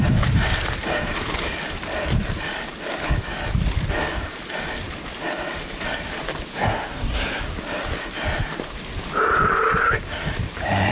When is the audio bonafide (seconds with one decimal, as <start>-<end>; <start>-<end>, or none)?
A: 0.0-6.5; 7.4-10.9